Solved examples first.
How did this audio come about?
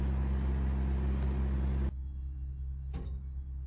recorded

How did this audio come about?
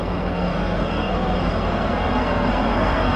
remade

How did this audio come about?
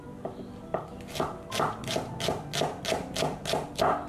recorded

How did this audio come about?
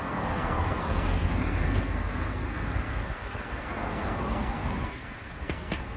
remade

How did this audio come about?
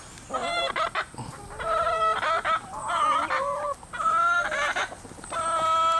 recorded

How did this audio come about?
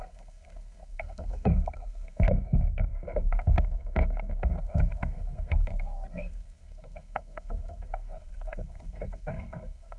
remade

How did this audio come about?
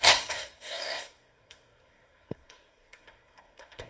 remade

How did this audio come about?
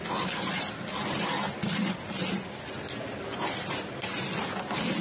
recorded